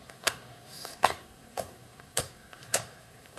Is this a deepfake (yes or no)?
yes